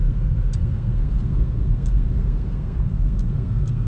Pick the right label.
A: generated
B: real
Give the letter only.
A